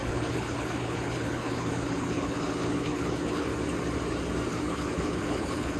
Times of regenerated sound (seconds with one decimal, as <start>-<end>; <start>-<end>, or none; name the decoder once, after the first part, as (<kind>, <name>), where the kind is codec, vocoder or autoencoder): 0.0-3.5 (codec, HILCodec); 4.5-5.8